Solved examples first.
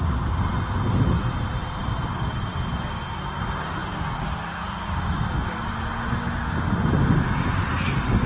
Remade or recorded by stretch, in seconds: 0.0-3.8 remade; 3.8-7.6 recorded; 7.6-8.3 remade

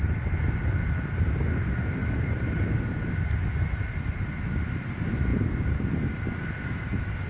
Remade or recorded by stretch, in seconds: 0.0-7.3 recorded

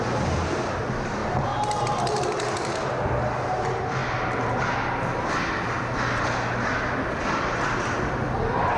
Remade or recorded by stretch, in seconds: 0.0-4.0 recorded; 4.0-4.6 remade; 4.6-8.8 recorded

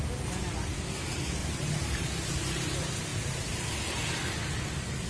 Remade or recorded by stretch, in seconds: 0.0-1.4 recorded; 1.4-2.1 remade; 2.1-5.1 recorded

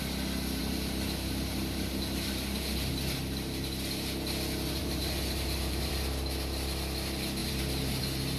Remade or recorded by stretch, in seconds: 0.0-0.6 recorded; 0.6-2.9 remade; 2.9-4.8 recorded; 4.8-5.9 remade; 5.9-7.4 recorded; 7.4-8.0 remade; 8.0-8.4 recorded